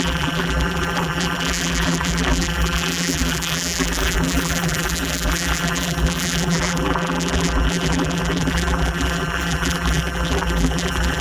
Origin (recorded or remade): remade